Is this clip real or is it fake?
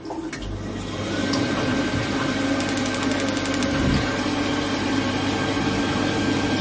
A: real